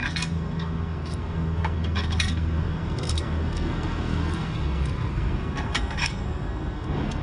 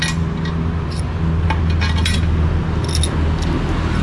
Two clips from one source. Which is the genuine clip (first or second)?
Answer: second